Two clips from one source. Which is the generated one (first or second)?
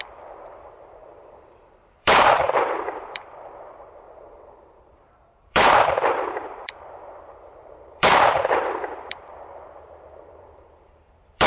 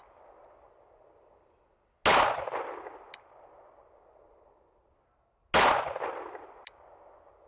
first